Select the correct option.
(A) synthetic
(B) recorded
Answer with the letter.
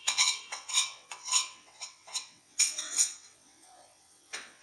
A